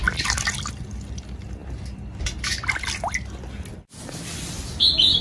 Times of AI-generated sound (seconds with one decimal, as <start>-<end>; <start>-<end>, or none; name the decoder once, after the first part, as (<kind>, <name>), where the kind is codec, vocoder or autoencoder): none